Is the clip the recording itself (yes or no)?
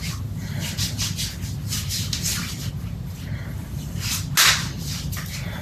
yes